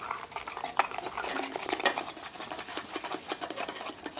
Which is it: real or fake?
real